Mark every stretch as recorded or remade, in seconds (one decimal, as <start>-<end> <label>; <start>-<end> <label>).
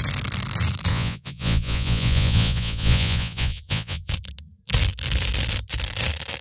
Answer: 0.0-0.9 recorded; 0.9-4.1 remade; 4.1-6.4 recorded